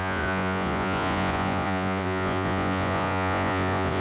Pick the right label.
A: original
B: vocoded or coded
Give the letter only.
B